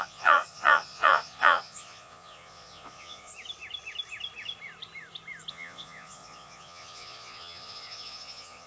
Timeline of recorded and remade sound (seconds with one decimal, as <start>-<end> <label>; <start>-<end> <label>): 0.0-3.3 remade; 3.3-5.5 recorded; 5.5-8.7 remade